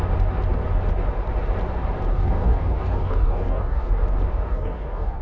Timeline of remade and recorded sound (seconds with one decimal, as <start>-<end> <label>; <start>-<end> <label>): 0.0-2.1 recorded; 2.1-3.9 remade; 3.9-4.3 recorded; 4.3-5.2 remade